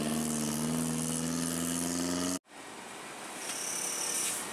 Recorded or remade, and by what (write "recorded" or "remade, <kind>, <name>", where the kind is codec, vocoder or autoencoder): recorded